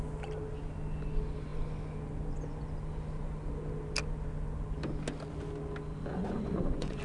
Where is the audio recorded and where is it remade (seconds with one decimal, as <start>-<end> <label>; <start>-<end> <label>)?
0.0-6.1 recorded; 6.1-7.0 remade